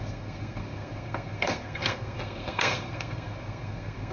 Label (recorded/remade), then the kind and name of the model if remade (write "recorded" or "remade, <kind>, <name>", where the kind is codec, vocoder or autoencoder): remade, codec, SNAC